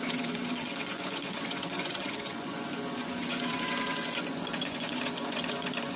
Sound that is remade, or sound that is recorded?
remade